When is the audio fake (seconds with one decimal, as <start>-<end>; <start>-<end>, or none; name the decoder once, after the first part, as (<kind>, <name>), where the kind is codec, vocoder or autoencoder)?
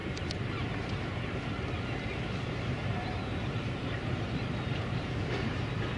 0.0-6.0 (vocoder, BigVGAN v2)